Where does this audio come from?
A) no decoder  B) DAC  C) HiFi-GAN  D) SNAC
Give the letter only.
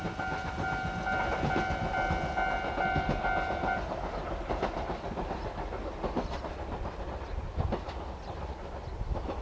A